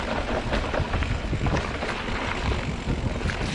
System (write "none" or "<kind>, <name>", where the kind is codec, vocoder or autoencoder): none